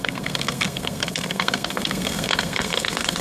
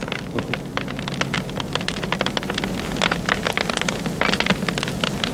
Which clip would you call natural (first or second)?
second